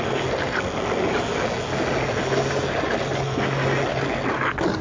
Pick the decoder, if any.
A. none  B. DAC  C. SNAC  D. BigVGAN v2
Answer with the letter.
A